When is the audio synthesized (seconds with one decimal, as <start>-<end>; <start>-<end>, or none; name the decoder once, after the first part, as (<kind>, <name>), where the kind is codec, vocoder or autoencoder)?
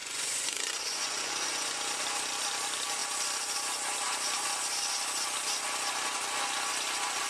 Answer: 0.0-1.8 (vocoder, Vocos)